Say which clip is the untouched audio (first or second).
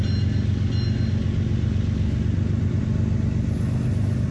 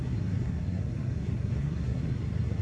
first